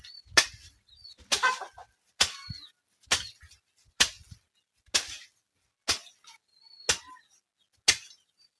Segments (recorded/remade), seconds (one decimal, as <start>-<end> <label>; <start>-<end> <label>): 0.0-8.6 recorded